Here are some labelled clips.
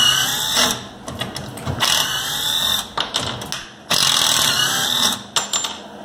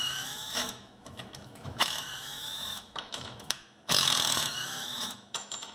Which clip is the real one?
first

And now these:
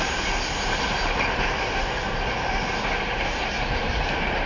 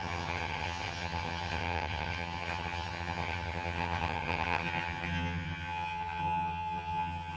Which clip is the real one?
first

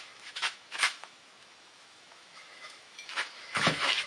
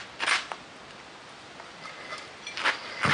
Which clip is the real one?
second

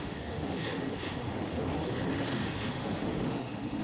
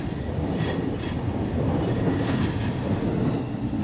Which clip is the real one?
second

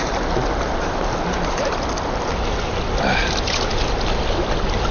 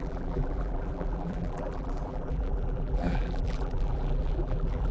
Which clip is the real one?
first